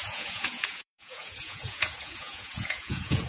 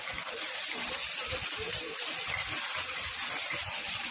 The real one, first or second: second